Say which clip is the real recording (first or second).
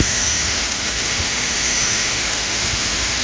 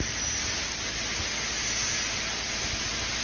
second